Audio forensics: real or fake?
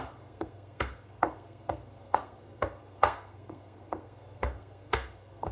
fake